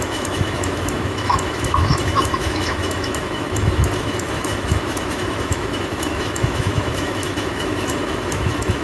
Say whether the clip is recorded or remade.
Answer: remade